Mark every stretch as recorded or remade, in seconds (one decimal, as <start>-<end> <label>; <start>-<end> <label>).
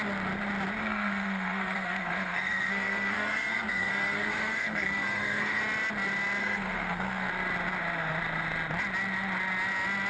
0.0-0.8 recorded; 0.8-5.6 remade; 5.6-6.4 recorded; 6.4-7.3 remade; 7.3-10.1 recorded